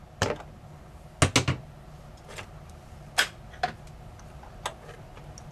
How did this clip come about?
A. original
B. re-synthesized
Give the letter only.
A